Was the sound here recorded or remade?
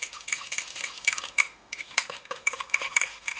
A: remade